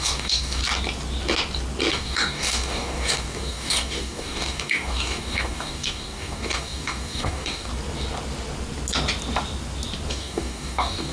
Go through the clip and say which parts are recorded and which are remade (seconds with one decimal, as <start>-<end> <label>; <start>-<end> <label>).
0.0-0.6 remade; 0.6-1.9 recorded; 1.9-7.7 remade; 7.7-10.1 recorded; 10.1-11.1 remade